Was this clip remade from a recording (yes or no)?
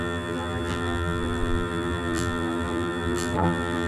yes